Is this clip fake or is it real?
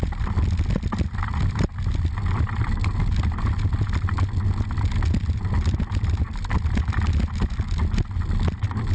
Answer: real